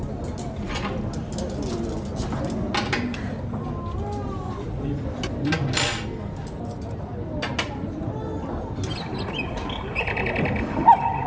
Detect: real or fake real